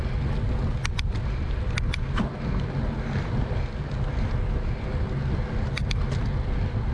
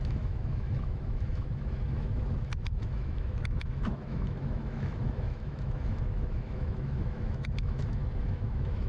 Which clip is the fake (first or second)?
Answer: second